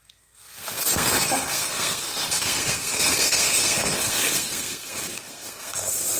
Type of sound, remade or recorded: remade